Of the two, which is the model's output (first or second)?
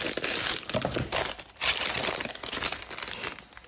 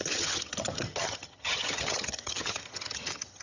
second